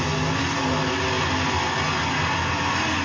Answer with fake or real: real